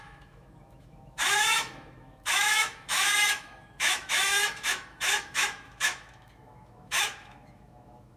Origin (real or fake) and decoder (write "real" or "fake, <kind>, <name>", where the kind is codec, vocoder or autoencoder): fake, autoencoder, DAC-VAE